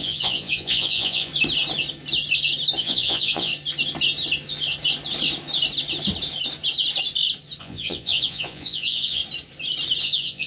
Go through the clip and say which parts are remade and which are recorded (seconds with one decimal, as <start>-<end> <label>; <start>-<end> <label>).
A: 0.0-1.3 remade; 1.3-2.8 recorded; 2.8-3.5 remade; 3.5-7.6 recorded; 7.6-9.2 remade; 9.2-10.0 recorded; 10.0-10.5 remade